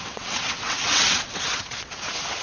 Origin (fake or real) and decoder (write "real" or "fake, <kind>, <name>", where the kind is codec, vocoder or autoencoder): fake, vocoder, WaveNeXt